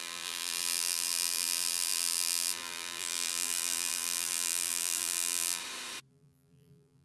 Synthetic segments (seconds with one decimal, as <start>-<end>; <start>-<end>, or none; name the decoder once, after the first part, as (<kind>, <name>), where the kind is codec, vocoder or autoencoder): 0.0-5.6 (vocoder, BigVGAN v2); 6.1-7.0